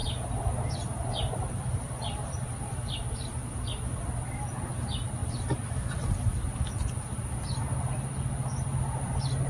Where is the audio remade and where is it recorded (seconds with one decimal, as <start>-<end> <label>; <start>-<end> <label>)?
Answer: 0.0-1.4 recorded; 1.4-2.9 remade; 2.9-5.2 recorded; 5.2-6.8 remade; 6.8-9.5 recorded